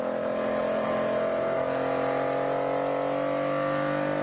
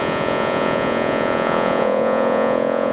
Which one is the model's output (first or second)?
second